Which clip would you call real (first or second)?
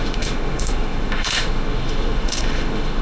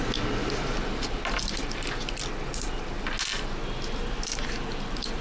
second